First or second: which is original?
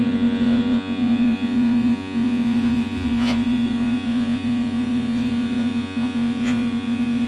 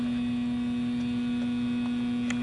second